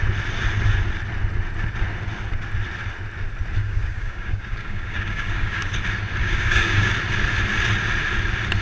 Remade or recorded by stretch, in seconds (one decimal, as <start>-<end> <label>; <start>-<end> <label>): 0.0-3.6 recorded; 3.6-5.7 remade; 5.7-6.2 recorded; 6.2-6.9 remade; 6.9-8.6 recorded